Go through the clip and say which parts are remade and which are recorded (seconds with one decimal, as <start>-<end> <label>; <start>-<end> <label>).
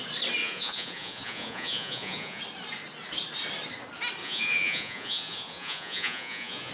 0.0-0.4 recorded; 0.4-2.4 remade; 2.4-4.2 recorded; 4.2-6.7 remade